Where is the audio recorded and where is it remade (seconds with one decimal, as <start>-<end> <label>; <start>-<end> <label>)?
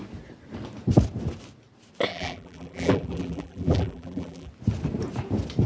0.0-2.1 recorded; 2.1-4.5 remade; 4.5-5.7 recorded